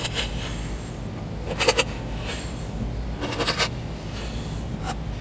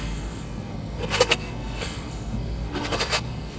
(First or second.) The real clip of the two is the first